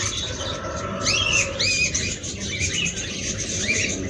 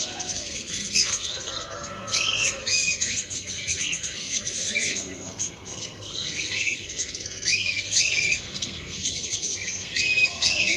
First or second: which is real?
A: first